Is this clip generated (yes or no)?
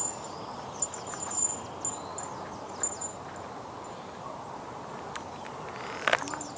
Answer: no